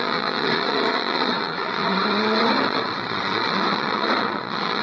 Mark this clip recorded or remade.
remade